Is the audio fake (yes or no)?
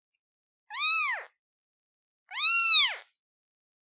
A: no